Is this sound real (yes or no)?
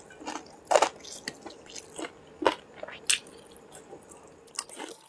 yes